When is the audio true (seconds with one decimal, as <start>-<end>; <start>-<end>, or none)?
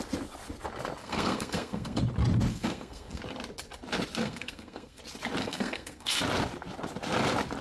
0.0-1.0; 2.0-2.5; 3.2-4.2; 5.0-5.4; 6.2-7.6